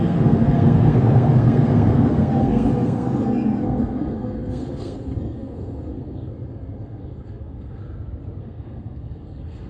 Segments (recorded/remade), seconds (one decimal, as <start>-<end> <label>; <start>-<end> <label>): 0.0-7.8 remade; 7.8-8.4 recorded; 8.4-9.7 remade